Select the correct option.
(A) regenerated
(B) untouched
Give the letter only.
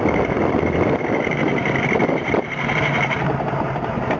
B